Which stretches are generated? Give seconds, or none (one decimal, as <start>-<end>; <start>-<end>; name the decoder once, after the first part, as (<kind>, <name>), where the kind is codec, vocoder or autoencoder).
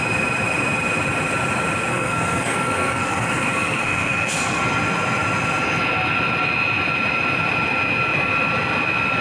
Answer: 1.9-4.6 (codec, SNAC)